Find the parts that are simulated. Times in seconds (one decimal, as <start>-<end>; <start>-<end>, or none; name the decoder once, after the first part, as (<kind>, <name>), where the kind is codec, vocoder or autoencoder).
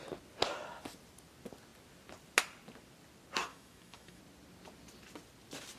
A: 3.5-4.2 (autoencoder, DAC-VAE)